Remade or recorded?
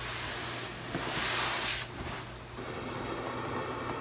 recorded